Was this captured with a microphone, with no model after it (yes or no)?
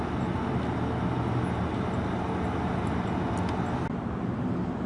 yes